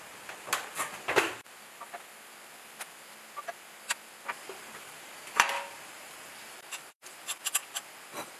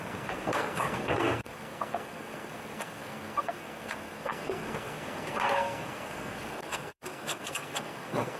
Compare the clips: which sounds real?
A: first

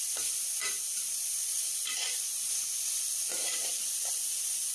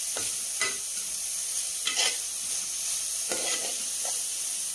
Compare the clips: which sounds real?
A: second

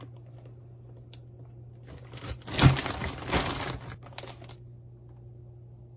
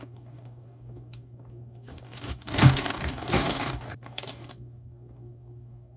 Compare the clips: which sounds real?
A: first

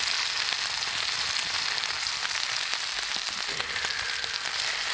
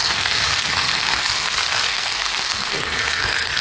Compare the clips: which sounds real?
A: first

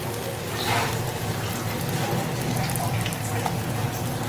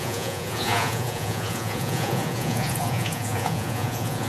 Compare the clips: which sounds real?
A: first